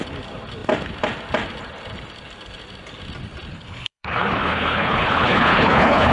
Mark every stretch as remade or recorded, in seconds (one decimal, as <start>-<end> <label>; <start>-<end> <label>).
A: 0.0-3.5 recorded; 3.5-6.1 remade